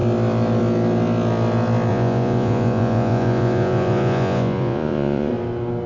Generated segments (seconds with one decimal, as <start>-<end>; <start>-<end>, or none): 1.9-5.3